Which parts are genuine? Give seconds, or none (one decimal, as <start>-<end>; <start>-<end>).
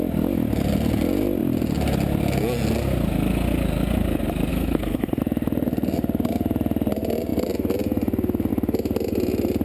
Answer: 0.0-4.5; 5.2-9.6